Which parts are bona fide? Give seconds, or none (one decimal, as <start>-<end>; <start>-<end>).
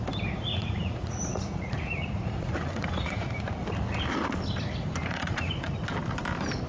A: 0.0-0.5; 3.4-5.0; 5.7-6.7